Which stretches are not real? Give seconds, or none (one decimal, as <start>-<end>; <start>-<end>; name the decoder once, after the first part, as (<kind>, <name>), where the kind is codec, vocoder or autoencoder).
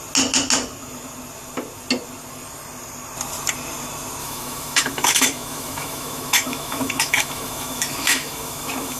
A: 4.2-9.0 (autoencoder, DAC-VAE)